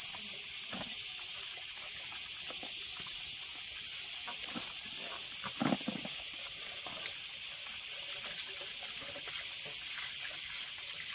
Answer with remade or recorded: recorded